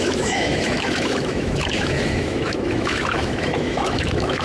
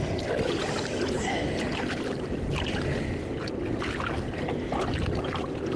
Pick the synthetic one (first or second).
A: first